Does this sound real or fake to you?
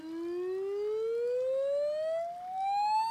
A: real